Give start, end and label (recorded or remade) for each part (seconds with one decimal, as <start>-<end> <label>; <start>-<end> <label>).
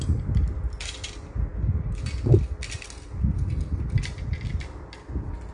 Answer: 0.0-5.5 recorded